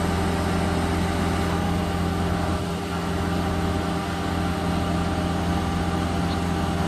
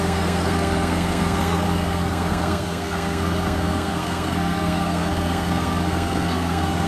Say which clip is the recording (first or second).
first